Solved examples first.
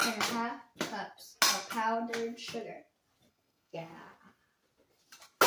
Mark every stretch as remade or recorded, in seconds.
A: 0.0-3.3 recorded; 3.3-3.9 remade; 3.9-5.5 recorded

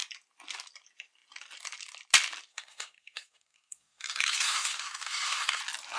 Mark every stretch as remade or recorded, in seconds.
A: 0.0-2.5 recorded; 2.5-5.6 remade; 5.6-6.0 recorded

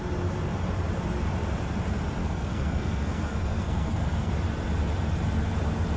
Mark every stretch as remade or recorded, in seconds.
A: 0.0-2.2 recorded; 2.2-4.3 remade; 4.3-6.0 recorded

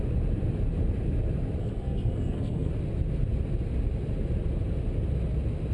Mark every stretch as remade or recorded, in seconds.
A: 0.0-1.6 recorded; 1.6-2.7 remade; 2.7-5.7 recorded

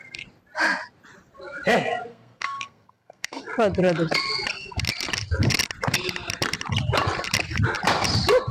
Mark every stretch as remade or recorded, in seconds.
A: 0.0-2.1 recorded; 2.1-3.4 remade; 3.4-8.5 recorded

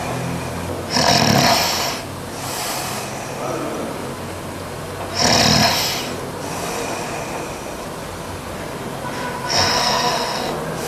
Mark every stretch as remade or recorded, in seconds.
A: 0.0-9.7 recorded; 9.7-10.5 remade; 10.5-10.9 recorded